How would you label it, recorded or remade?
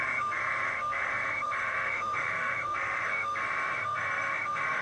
remade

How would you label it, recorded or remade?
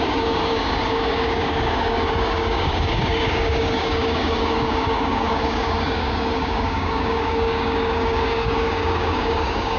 remade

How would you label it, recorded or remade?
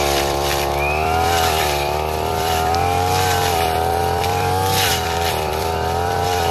remade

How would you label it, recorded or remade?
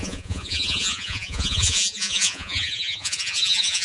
remade